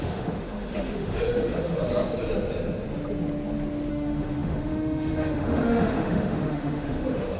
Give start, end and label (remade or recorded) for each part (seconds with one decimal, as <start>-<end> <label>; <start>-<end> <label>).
0.0-1.9 remade; 1.9-3.9 recorded; 3.9-7.4 remade